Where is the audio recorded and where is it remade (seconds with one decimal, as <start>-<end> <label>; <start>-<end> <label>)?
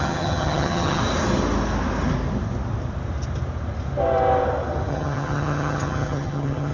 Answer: 0.0-1.0 remade; 1.0-4.9 recorded; 4.9-6.7 remade